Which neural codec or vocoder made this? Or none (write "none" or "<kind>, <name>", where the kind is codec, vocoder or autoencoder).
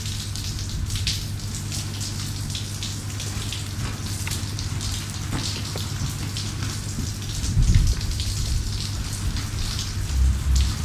none